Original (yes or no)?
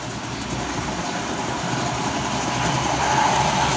yes